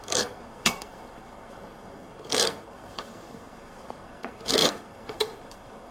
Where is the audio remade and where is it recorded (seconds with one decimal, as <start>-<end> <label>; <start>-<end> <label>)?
0.0-5.9 remade